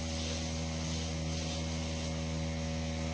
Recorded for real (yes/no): yes